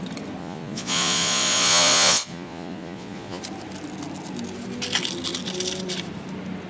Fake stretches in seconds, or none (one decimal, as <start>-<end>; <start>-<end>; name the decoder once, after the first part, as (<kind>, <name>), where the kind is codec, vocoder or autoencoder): 0.4-3.4 (vocoder, Vocos)